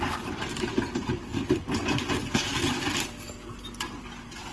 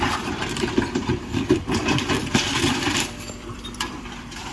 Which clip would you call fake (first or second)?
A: second